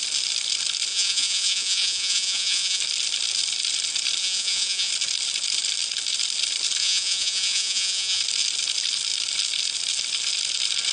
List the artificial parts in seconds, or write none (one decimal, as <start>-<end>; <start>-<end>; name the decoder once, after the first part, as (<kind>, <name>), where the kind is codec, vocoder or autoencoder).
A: 0.9-2.8 (vocoder, Vocos); 4.2-4.9; 6.8-8.2